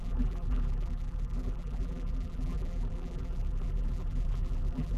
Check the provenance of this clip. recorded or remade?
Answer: remade